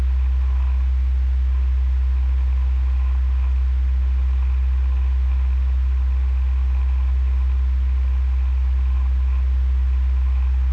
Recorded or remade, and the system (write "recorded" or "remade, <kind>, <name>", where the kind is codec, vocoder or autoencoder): recorded